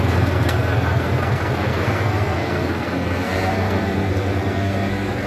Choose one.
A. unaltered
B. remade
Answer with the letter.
B